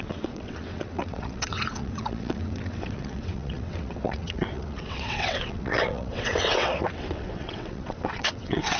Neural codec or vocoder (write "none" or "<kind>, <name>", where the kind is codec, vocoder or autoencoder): vocoder, WaveNeXt